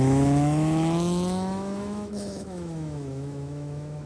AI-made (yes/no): yes